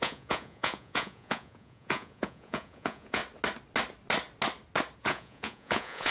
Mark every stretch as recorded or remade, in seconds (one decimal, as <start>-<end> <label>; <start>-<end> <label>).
0.0-3.2 remade; 3.2-5.0 recorded; 5.0-6.1 remade